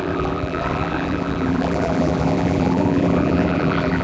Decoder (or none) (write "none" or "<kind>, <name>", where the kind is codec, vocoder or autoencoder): vocoder, BigVGAN v2